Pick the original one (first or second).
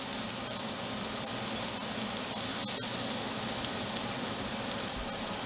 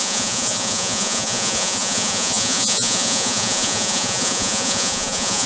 first